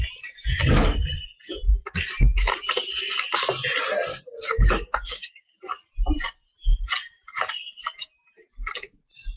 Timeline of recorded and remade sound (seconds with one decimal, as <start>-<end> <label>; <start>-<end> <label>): 0.0-4.1 recorded; 4.1-5.6 remade; 5.6-9.4 recorded